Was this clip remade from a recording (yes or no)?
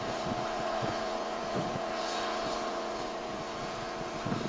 yes